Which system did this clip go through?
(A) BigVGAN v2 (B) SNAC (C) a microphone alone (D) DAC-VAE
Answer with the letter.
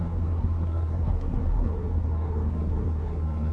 B